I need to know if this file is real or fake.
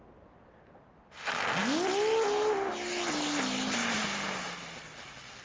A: real